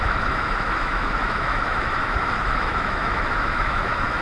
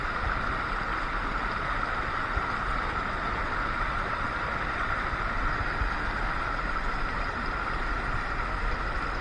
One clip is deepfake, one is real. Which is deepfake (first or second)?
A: first